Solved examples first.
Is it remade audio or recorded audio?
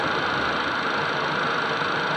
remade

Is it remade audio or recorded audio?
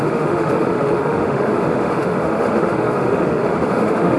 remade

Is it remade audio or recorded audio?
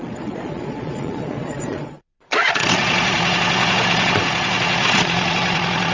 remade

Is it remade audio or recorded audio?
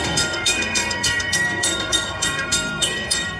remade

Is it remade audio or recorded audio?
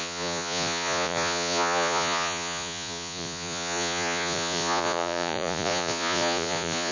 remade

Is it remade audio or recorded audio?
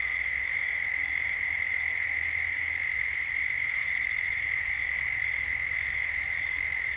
remade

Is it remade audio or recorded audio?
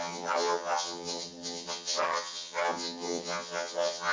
remade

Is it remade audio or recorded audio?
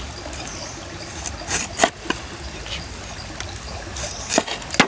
recorded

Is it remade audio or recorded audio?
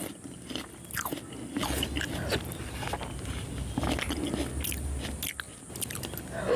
recorded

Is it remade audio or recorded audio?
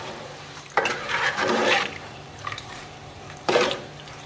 remade